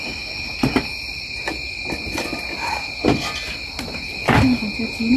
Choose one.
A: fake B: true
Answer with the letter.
B